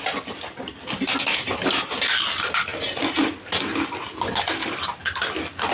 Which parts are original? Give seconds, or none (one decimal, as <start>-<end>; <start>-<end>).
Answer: 0.0-5.7